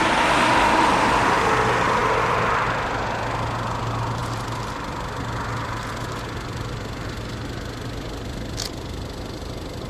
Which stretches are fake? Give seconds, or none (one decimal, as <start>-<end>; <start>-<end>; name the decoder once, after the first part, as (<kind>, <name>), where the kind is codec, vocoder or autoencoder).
none